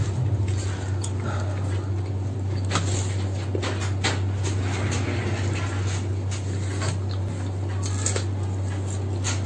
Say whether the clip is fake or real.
real